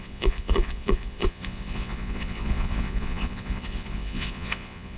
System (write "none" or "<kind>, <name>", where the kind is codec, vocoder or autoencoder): vocoder, Vocos